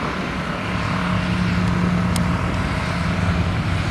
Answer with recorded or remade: recorded